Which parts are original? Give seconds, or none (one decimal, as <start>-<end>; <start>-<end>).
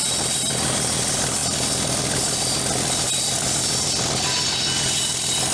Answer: 0.0-5.5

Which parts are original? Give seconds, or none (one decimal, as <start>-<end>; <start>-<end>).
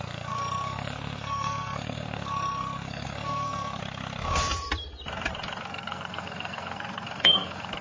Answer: 3.8-5.6